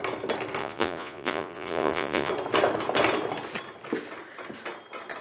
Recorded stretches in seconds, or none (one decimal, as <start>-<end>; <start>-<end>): 0.0-0.6; 2.3-5.2